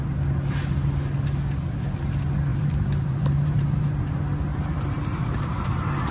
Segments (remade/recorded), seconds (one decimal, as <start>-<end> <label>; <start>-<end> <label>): 0.0-2.5 recorded; 2.5-4.0 remade; 4.0-4.5 recorded; 4.5-6.1 remade